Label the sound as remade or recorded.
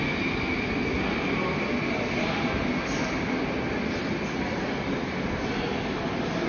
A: recorded